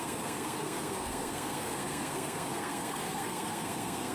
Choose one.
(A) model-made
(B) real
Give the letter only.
A